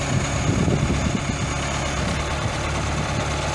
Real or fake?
real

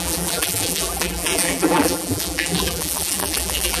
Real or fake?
fake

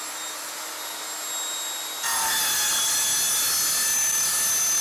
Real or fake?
real